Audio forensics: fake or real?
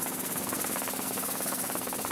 fake